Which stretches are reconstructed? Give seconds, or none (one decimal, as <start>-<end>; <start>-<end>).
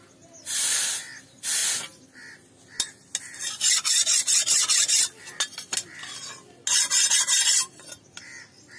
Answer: none